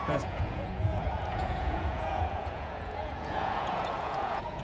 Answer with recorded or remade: remade